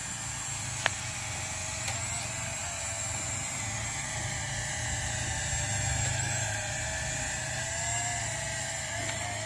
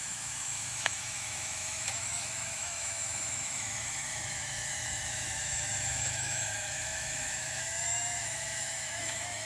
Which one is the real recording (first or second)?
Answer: first